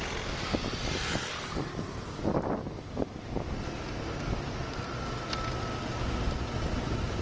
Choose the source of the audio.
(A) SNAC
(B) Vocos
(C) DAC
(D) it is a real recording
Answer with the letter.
D